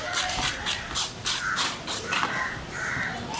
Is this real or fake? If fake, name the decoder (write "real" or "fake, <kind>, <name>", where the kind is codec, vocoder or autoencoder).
real